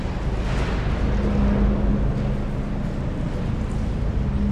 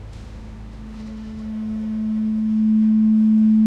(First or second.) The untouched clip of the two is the first